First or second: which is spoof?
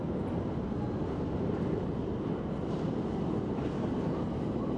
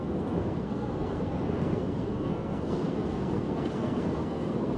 second